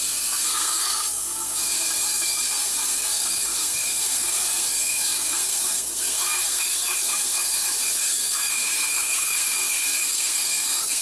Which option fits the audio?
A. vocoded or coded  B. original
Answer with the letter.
A